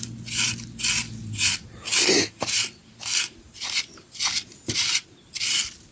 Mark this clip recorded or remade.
recorded